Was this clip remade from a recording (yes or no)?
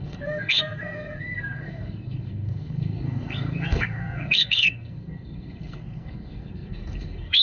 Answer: yes